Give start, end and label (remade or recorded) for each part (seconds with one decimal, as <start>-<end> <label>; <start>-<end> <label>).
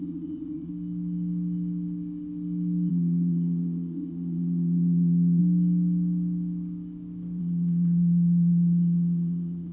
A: 0.0-0.7 remade; 0.7-2.9 recorded; 2.9-5.4 remade; 5.4-7.4 recorded; 7.4-9.7 remade